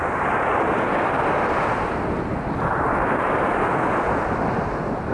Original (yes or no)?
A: yes